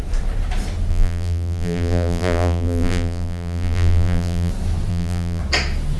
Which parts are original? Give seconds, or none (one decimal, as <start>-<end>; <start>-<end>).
0.0-0.9; 4.5-4.9; 5.4-6.0